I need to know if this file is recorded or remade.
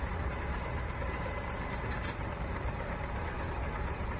remade